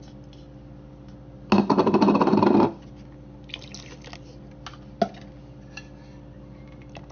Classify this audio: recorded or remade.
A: recorded